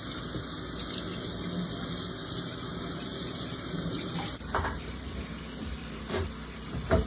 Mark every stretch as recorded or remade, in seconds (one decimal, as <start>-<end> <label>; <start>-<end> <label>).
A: 0.0-2.7 recorded; 2.7-5.4 remade; 5.4-7.1 recorded